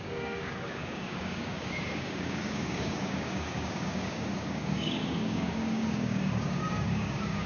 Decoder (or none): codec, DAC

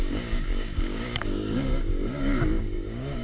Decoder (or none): codec, DAC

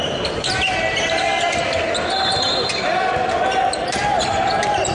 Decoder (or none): none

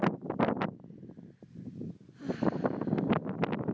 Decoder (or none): none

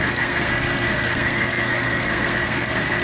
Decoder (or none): codec, SNAC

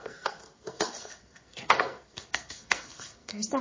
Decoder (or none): codec, SNAC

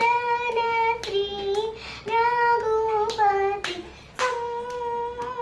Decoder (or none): none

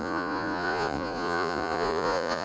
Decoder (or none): vocoder, Vocos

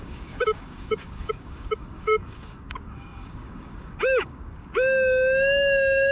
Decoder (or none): codec, DAC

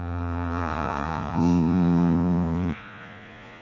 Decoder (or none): vocoder, Vocos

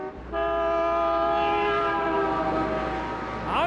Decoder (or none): none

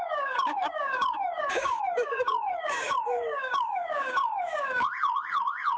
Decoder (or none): codec, DAC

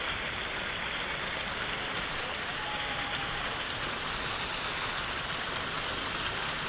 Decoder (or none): none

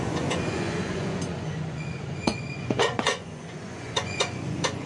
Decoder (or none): vocoder, Vocos